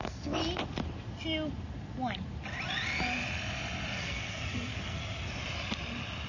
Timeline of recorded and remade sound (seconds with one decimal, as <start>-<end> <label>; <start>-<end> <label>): 0.0-0.4 remade; 0.4-4.0 recorded; 4.0-5.0 remade; 5.0-6.3 recorded